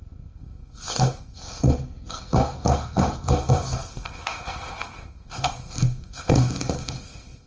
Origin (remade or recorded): remade